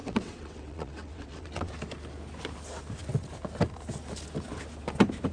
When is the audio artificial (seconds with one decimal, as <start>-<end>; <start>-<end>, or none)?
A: 0.0-1.7